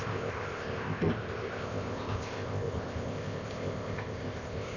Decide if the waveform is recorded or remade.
remade